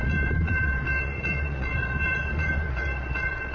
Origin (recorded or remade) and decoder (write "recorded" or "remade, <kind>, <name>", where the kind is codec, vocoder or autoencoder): remade, vocoder, Vocos